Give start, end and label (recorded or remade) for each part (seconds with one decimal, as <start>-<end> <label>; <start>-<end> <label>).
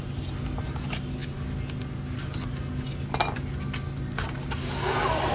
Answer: 0.0-5.3 recorded